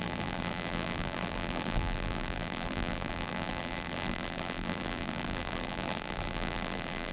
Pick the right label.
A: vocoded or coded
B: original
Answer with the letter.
A